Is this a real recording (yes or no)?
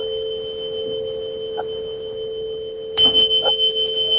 yes